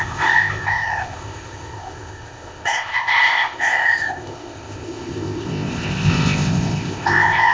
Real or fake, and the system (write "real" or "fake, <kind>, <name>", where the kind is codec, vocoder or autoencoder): fake, codec, ZipCodec